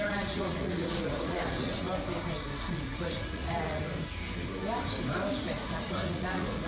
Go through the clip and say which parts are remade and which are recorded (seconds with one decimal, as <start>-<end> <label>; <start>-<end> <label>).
0.0-1.9 remade; 1.9-2.6 recorded; 2.6-3.8 remade; 3.8-5.3 recorded; 5.3-6.7 remade